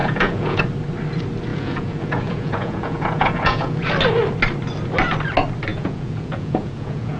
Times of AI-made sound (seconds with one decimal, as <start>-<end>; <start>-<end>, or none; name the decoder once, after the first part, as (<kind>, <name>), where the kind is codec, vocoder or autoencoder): 0.0-0.6 (vocoder, Vocos); 1.5-3.9; 5.7-7.2